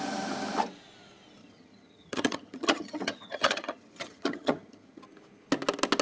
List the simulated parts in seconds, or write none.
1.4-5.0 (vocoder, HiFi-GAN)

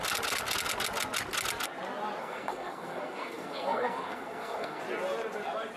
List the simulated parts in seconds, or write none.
2.2-4.8 (codec, SNAC)

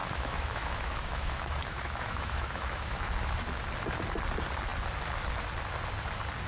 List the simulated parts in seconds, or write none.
0.0-3.1 (autoencoder, DAC-VAE)

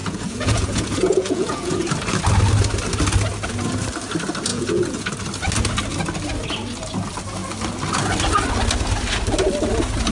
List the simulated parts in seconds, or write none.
0.0-1.9 (vocoder, Vocos); 4.5-5.1

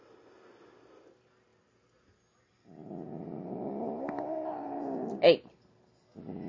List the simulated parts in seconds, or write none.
none

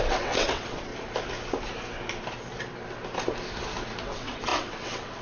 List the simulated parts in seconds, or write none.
0.0-0.9 (vocoder, WaveNeXt); 4.0-5.2